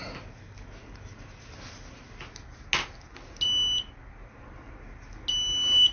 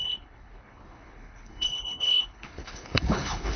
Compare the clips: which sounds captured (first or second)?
first